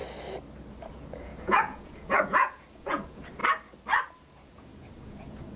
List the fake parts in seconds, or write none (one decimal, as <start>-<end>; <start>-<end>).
0.8-3.4; 4.1-5.6